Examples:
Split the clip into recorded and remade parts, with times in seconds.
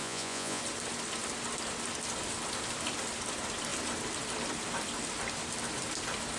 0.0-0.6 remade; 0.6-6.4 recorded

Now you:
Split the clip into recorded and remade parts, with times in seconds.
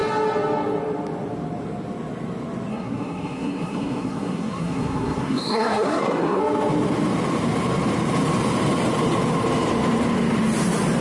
0.0-2.7 recorded; 2.7-6.4 remade; 6.4-11.0 recorded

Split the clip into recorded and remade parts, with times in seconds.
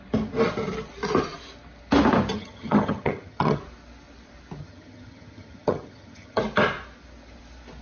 0.0-2.3 recorded; 2.3-3.6 remade; 3.6-4.6 recorded; 4.6-6.4 remade; 6.4-7.8 recorded